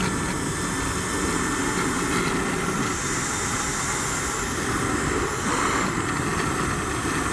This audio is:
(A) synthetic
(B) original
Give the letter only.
B